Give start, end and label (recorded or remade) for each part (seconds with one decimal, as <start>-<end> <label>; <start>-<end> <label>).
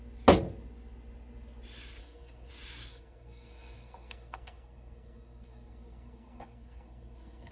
0.0-2.0 recorded; 2.0-2.5 remade; 2.5-2.9 recorded; 2.9-7.5 remade